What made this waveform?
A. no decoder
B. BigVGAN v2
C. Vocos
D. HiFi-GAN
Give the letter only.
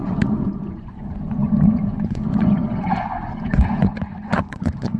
C